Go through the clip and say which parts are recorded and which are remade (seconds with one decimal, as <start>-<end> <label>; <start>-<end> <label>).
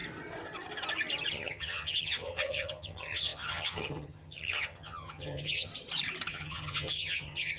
0.0-1.3 recorded; 1.3-5.7 remade; 5.7-6.3 recorded; 6.3-7.6 remade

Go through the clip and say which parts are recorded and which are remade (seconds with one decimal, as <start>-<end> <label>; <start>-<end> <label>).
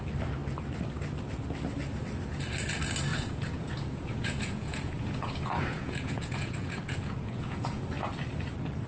0.0-3.1 recorded; 3.1-7.8 remade; 7.8-8.9 recorded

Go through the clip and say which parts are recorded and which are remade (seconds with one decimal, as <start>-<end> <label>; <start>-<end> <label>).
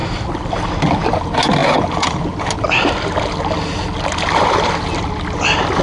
0.0-5.8 recorded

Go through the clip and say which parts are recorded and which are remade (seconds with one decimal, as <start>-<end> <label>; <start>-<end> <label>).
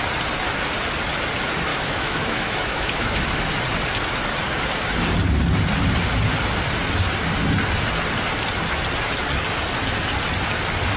0.0-1.7 recorded; 1.7-3.2 remade; 3.2-11.0 recorded